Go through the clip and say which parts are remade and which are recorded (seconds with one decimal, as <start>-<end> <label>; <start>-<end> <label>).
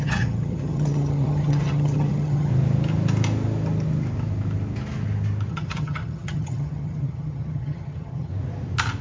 0.0-2.5 remade; 2.5-5.5 recorded; 5.5-8.3 remade; 8.3-9.0 recorded